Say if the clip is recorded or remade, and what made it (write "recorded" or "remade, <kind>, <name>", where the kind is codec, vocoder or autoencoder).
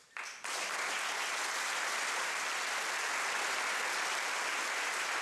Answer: recorded